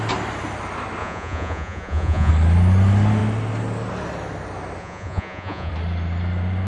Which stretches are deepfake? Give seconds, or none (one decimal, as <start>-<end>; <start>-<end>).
1.0-2.3; 4.8-5.7